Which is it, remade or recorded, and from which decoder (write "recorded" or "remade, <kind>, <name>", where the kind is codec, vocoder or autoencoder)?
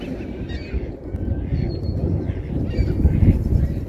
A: recorded